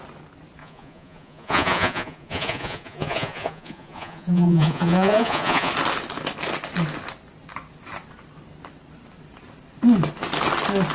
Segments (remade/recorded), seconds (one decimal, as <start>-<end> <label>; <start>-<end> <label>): 0.0-0.6 recorded; 0.6-5.7 remade; 5.7-10.9 recorded